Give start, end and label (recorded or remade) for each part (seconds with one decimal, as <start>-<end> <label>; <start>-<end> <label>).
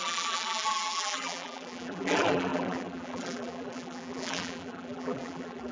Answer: 0.0-5.7 remade